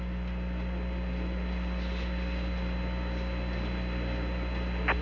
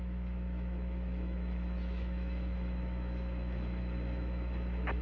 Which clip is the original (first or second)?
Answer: first